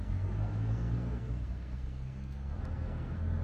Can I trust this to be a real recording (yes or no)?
no